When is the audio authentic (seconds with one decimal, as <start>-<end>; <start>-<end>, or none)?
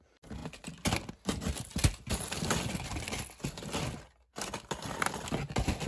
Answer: 0.0-5.9